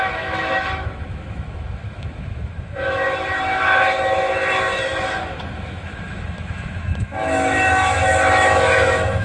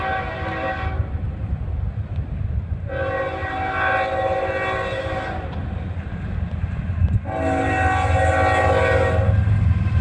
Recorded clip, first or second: second